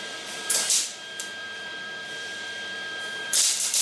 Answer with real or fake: fake